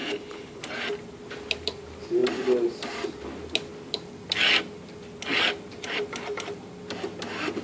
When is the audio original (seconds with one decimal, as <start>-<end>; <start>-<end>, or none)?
0.6-7.6